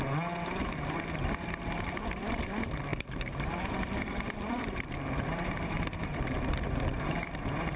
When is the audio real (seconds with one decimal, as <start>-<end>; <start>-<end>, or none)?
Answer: 0.0-2.9; 6.0-7.8